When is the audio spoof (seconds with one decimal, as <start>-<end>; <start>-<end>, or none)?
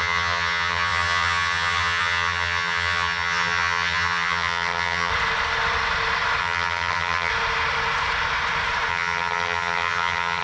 0.0-5.1; 6.4-7.3; 8.9-10.4